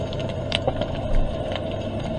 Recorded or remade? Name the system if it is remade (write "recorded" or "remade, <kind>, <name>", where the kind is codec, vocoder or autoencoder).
remade, vocoder, BigVGAN v2